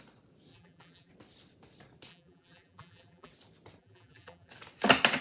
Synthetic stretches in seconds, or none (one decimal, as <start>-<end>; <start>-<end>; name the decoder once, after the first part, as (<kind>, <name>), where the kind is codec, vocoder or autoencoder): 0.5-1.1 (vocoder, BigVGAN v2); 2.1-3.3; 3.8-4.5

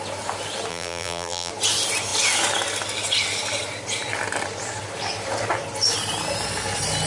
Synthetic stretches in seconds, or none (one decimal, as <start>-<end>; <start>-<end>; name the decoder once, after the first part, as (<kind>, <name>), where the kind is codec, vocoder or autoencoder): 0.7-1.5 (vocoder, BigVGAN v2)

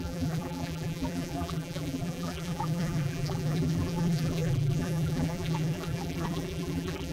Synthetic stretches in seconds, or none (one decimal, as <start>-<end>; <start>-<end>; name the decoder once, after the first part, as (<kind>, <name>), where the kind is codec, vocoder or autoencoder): 0.0-7.1 (vocoder, BigVGAN v2)

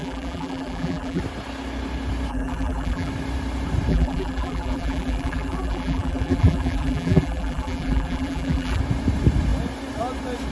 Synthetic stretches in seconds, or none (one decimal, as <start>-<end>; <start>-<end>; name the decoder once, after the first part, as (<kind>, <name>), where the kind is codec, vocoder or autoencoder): 0.0-1.2 (vocoder, BigVGAN v2); 2.3-3.1; 3.9-8.8

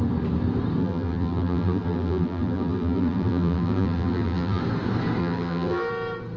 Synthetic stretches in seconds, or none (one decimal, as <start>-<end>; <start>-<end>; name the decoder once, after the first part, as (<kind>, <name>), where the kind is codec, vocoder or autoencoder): 0.8-4.6 (vocoder, BigVGAN v2); 5.2-5.9